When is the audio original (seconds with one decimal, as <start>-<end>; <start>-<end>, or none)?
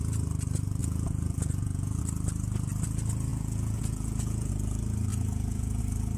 0.0-0.8; 2.0-3.3; 4.5-5.1; 5.8-6.2